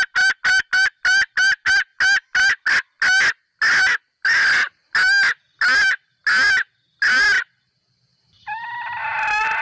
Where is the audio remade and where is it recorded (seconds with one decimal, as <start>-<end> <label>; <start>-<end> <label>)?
0.0-9.6 recorded